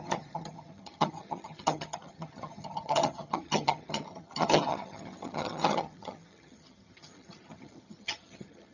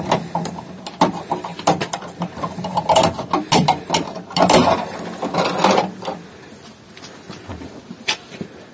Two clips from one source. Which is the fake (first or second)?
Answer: first